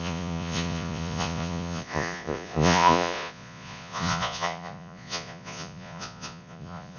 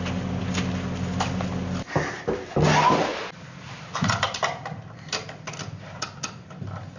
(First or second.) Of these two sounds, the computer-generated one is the first